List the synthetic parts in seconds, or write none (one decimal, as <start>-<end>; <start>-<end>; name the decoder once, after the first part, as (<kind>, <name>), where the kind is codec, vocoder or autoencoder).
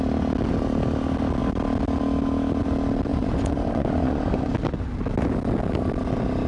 3.1-4.5 (vocoder, Vocos)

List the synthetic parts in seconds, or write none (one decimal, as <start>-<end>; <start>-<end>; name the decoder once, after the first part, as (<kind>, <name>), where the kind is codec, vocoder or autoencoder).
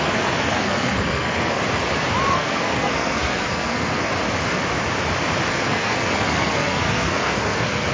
0.0-1.6 (codec, SNAC); 2.3-4.1; 5.5-7.9